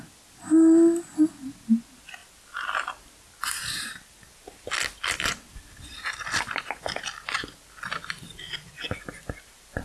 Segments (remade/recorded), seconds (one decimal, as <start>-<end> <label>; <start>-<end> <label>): 0.0-9.8 recorded